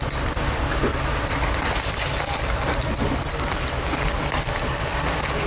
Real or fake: real